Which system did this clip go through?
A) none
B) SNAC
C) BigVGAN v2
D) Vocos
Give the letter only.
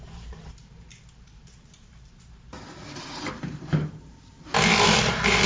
C